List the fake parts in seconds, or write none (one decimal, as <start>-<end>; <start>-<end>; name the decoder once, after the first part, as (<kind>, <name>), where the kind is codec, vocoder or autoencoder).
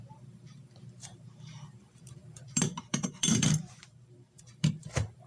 0.0-5.3 (vocoder, BigVGAN v2)